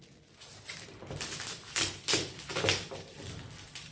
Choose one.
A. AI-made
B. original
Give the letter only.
B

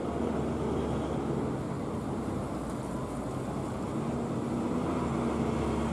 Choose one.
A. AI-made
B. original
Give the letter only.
B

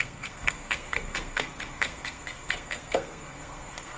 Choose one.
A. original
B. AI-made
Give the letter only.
B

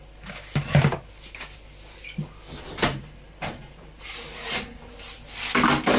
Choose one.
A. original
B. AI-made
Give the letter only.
A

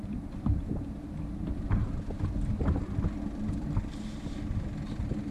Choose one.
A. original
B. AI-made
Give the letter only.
A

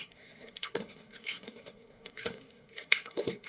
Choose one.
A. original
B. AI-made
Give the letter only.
B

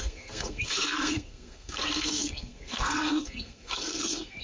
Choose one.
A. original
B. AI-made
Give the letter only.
B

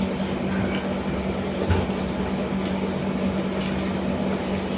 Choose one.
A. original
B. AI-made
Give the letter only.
A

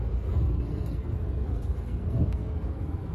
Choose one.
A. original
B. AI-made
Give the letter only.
B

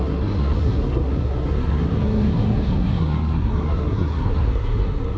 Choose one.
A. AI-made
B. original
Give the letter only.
A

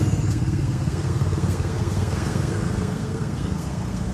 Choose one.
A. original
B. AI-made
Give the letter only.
B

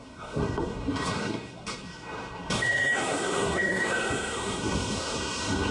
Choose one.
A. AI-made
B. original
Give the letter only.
A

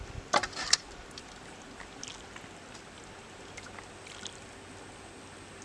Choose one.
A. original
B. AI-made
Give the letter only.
A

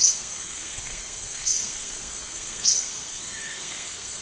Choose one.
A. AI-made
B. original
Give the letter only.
A